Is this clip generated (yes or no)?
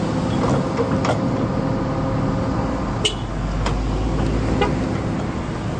no